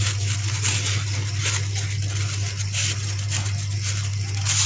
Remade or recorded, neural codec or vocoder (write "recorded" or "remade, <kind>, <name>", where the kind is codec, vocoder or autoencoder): recorded